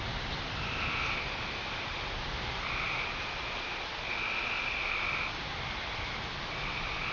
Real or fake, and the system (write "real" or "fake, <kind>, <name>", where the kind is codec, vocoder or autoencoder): real